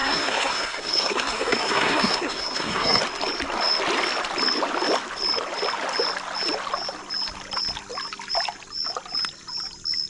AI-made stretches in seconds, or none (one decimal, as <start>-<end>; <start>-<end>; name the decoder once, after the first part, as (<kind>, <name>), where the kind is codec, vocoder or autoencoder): 0.0-3.0 (codec, SNAC)